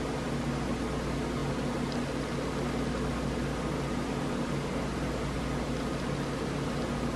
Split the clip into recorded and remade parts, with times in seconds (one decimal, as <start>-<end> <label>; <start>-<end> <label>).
0.0-7.2 recorded